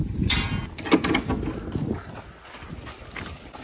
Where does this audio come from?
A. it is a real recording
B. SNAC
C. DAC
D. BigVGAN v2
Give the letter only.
A